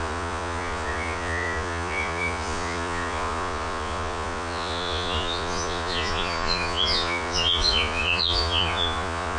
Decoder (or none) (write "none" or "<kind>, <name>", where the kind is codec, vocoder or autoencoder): vocoder, Vocos